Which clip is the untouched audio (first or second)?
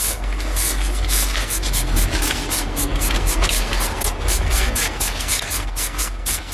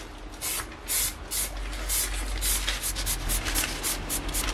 second